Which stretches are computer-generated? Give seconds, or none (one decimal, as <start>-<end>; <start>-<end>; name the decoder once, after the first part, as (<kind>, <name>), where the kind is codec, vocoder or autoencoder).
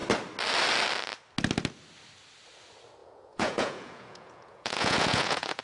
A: 3.0-5.6 (vocoder, Vocos)